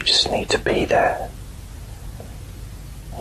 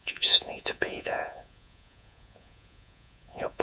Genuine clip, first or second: first